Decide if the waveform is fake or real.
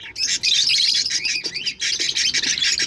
real